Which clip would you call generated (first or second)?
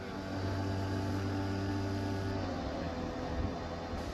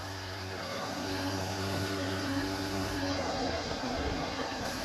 second